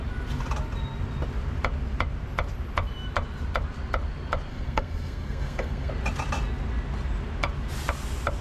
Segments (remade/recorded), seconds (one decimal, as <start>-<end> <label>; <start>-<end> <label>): 0.0-4.5 recorded; 4.5-5.9 remade; 5.9-8.4 recorded